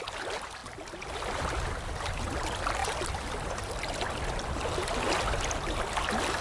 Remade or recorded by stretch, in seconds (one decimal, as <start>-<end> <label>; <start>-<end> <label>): 0.0-6.4 recorded